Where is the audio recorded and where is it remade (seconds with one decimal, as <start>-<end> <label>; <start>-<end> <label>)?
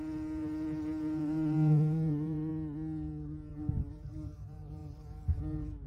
0.0-2.5 remade; 2.5-3.5 recorded; 3.5-5.9 remade